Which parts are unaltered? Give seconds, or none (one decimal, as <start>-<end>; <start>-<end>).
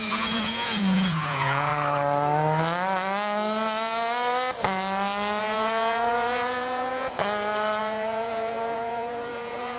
1.7-5.4; 7.2-7.8